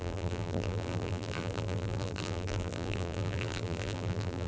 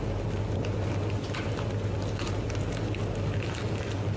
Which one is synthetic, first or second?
first